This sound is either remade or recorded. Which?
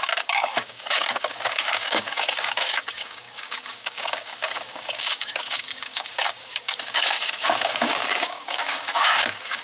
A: remade